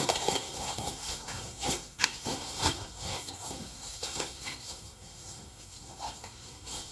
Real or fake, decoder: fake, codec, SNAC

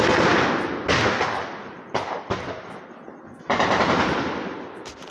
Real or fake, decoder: real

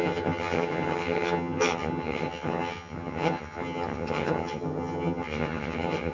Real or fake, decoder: fake, vocoder, HiFi-GAN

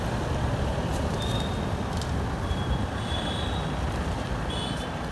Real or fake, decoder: real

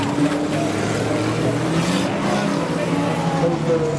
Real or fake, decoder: real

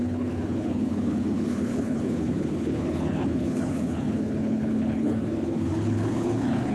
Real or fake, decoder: fake, codec, HILCodec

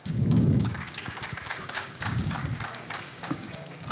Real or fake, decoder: fake, codec, DAC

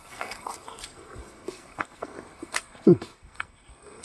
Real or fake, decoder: fake, codec, SNAC